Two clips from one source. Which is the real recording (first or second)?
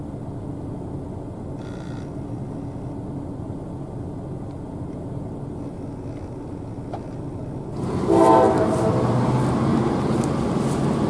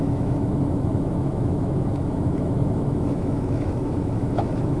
first